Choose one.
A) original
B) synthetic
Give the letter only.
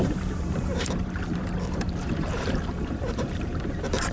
B